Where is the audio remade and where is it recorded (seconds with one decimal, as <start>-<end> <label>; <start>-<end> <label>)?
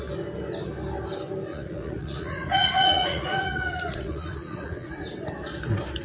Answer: 0.0-1.5 recorded; 1.5-5.1 remade; 5.1-6.0 recorded